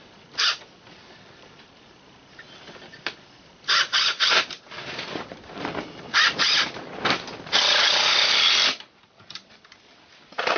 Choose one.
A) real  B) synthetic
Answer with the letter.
B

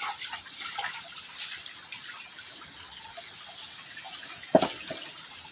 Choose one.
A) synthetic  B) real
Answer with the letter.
B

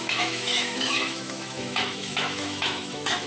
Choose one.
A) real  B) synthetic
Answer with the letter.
B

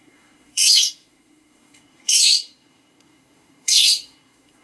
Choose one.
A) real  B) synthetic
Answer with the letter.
B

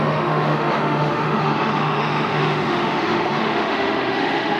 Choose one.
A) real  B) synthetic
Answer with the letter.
B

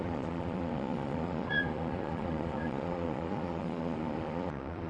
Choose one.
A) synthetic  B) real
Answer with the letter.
A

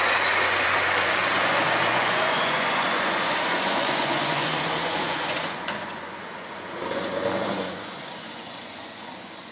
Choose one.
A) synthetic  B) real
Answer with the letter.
A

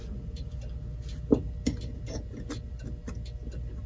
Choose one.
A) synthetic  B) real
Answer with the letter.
B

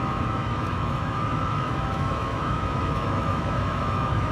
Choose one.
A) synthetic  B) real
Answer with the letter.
A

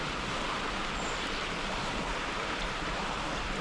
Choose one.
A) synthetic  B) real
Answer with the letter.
B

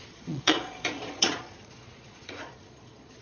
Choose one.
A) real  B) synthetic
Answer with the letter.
B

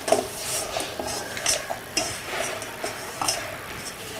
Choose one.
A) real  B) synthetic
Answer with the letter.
B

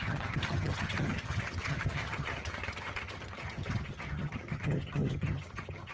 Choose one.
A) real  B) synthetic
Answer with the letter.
B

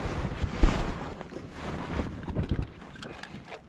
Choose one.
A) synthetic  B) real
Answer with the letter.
B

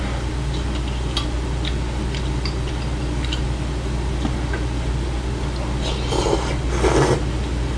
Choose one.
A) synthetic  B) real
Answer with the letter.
B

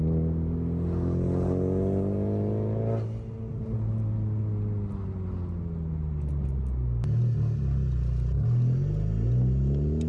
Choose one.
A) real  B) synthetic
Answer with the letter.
A